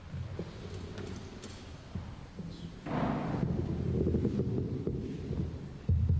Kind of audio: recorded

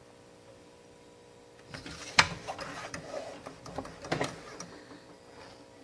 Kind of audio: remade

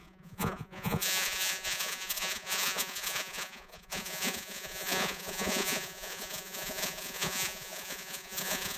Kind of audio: remade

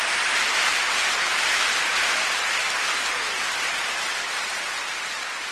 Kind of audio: recorded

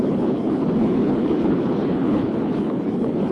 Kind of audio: remade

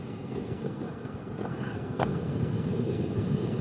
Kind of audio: remade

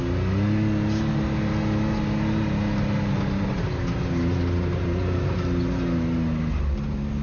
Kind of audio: recorded